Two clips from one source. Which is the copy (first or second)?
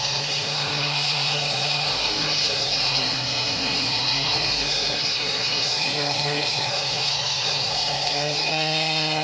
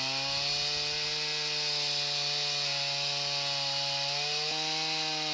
first